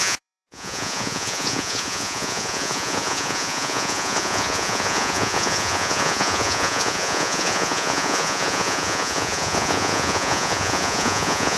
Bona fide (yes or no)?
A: no